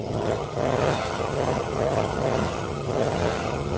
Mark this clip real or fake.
fake